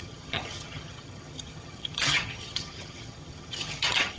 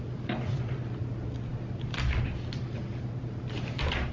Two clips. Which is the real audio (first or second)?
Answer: second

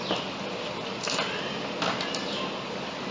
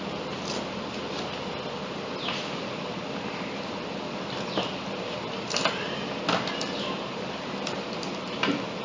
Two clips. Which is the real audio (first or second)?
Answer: first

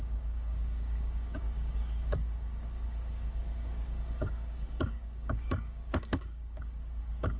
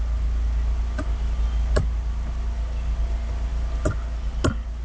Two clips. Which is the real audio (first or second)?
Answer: second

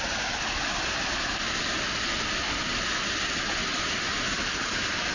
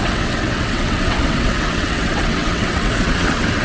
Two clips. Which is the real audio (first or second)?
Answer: first